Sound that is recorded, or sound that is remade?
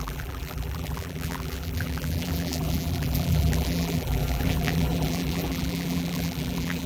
remade